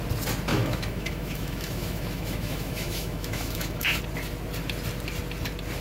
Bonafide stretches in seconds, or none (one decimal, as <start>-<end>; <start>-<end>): 0.0-0.5; 4.0-5.8